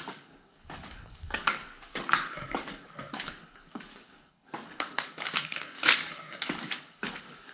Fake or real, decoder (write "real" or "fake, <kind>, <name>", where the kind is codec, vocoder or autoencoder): fake, codec, DAC